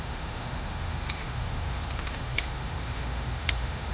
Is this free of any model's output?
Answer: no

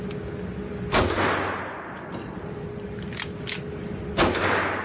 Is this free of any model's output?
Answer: yes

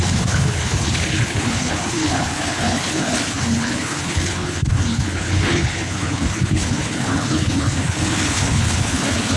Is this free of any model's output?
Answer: no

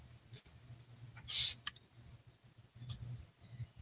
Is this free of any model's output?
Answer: no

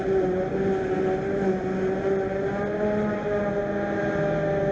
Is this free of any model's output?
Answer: yes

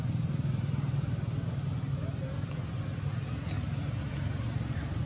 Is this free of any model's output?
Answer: yes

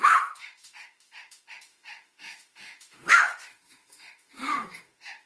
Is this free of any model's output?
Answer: no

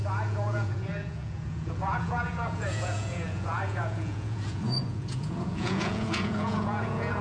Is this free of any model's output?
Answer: no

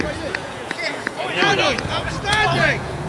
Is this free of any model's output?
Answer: no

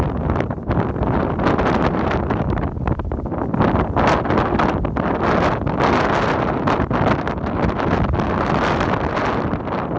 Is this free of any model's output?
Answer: yes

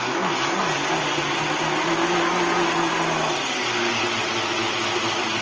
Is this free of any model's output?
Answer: yes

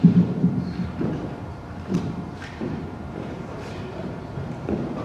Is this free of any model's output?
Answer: no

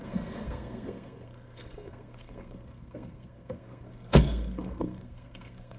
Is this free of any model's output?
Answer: no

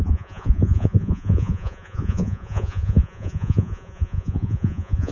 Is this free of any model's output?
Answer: no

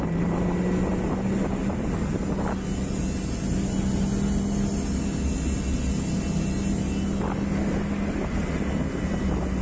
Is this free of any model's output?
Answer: yes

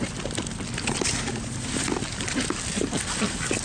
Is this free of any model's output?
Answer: yes